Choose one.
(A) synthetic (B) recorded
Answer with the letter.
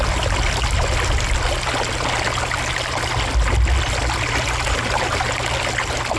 B